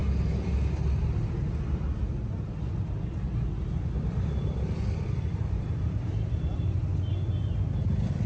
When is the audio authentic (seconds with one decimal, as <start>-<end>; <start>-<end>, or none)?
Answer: 0.0-3.2; 6.9-7.7